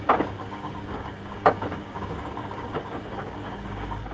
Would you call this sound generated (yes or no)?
yes